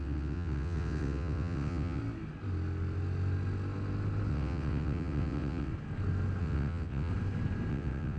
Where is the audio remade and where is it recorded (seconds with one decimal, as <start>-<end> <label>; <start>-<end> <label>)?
0.0-2.0 remade; 2.0-4.3 recorded; 4.3-5.7 remade; 5.7-6.4 recorded; 6.4-7.1 remade; 7.1-7.7 recorded; 7.7-8.2 remade